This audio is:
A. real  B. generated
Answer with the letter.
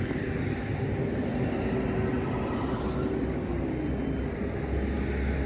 A